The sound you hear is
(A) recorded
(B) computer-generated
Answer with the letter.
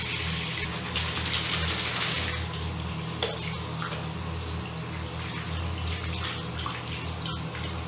A